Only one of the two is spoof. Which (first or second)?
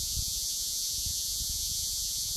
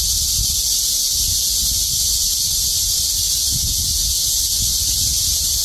first